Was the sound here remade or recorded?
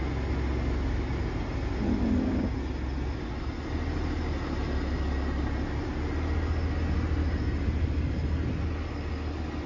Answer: recorded